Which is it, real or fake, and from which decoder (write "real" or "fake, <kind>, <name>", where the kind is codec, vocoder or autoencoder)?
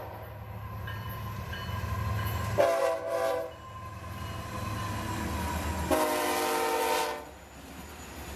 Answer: real